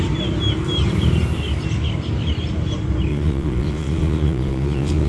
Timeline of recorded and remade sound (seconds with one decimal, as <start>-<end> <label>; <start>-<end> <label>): 0.0-3.1 recorded; 3.1-5.1 remade